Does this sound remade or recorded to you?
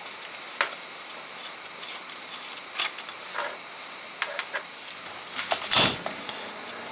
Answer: recorded